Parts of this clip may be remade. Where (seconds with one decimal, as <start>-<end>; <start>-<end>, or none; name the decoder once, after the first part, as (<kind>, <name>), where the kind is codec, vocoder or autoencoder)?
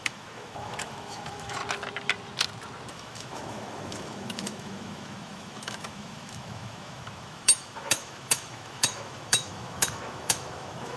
0.0-1.6 (autoencoder, DAC-VAE); 2.9-11.0